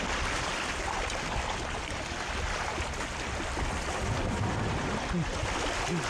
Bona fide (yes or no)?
yes